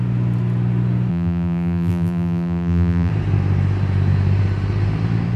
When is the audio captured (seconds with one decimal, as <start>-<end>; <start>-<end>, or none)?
0.0-1.1; 3.1-5.4